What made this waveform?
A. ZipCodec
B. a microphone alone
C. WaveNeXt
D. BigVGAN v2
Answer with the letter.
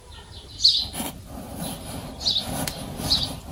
B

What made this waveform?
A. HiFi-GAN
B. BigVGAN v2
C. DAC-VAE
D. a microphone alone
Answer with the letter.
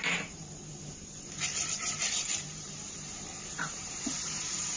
B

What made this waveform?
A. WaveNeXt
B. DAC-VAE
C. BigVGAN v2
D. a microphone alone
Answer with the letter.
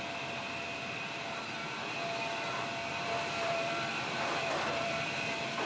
C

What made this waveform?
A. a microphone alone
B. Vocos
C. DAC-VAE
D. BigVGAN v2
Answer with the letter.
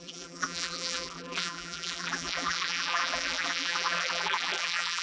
D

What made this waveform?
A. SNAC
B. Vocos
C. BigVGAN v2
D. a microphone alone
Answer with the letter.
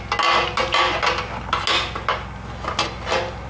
D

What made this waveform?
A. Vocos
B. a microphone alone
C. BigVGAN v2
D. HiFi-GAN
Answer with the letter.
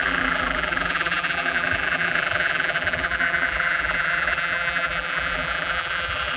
C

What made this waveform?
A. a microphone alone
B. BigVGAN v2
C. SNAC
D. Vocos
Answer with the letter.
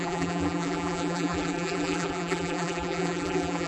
B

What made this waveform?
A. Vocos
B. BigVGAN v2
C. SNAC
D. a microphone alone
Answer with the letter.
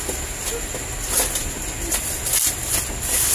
D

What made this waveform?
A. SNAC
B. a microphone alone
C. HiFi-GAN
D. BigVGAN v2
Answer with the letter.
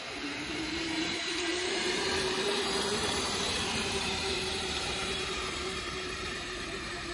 D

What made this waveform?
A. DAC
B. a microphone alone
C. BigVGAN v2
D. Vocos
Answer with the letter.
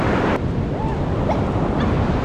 B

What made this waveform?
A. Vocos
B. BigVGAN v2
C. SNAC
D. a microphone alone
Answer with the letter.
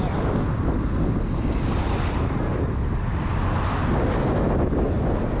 D